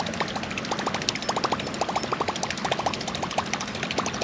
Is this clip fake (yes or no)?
no